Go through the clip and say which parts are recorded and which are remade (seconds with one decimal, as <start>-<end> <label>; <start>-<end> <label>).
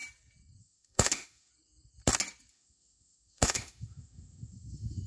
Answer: 0.0-0.6 recorded; 0.6-1.5 remade; 1.5-2.5 recorded; 2.5-5.1 remade